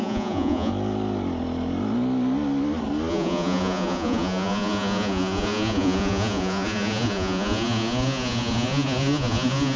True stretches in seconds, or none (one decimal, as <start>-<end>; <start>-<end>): 0.7-3.1